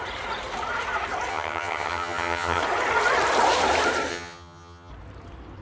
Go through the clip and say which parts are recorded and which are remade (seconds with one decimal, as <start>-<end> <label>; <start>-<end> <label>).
0.0-1.3 recorded; 1.3-2.6 remade; 2.6-4.1 recorded; 4.1-4.9 remade; 4.9-5.6 recorded